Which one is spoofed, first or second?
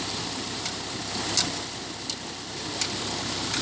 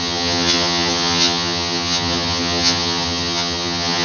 second